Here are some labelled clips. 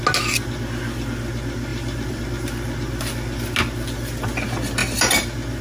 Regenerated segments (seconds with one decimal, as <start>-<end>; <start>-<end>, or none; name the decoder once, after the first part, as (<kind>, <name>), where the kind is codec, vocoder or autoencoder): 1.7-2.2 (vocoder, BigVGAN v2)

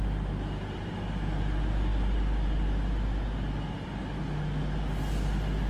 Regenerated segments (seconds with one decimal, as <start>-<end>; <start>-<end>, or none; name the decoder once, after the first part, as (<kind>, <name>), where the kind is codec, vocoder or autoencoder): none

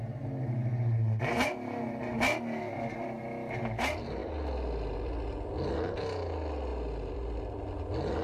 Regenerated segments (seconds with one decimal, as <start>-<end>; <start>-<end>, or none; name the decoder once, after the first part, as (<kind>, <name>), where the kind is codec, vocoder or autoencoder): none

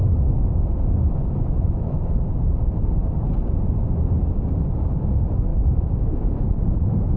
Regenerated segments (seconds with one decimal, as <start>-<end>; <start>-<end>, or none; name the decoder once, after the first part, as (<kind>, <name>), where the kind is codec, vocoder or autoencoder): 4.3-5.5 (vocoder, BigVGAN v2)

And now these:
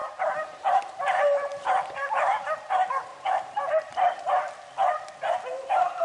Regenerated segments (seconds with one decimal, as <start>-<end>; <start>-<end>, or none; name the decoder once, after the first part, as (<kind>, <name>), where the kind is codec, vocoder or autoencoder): 0.0-0.8 (vocoder, BigVGAN v2); 1.5-2.5; 3.1-4.2

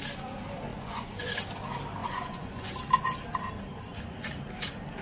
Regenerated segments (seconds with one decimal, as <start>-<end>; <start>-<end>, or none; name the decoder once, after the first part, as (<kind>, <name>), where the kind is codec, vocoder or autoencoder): 0.7-1.3 (vocoder, Vocos); 2.0-2.7

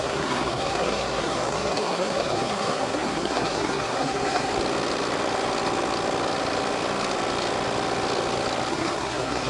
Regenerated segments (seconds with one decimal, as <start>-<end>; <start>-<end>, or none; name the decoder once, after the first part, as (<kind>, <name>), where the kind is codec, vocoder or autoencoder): 0.0-4.5 (codec, SNAC); 8.7-9.5